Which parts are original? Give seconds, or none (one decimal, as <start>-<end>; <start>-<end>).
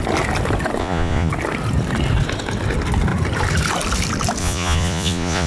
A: 0.0-0.8; 1.3-4.4